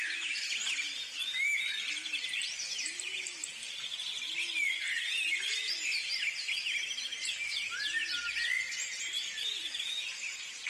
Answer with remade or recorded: recorded